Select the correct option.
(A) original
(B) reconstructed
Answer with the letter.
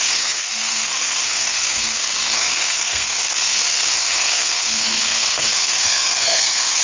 B